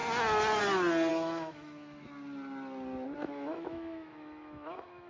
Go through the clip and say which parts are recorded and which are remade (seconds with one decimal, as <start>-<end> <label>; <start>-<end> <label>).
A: 0.0-1.1 recorded; 1.1-2.1 remade; 2.1-3.2 recorded; 3.2-5.1 remade